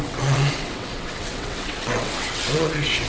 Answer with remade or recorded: remade